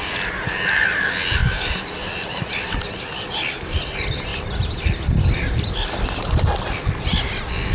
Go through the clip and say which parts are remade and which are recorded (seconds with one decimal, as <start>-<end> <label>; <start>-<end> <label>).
0.0-1.4 recorded; 1.4-2.5 remade; 2.5-4.3 recorded; 4.3-6.1 remade; 6.1-7.7 recorded